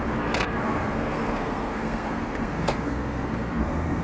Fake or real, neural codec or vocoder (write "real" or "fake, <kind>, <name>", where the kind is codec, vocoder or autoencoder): fake, codec, SNAC